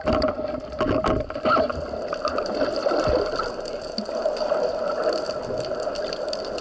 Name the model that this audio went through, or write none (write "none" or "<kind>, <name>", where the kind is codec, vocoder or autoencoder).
none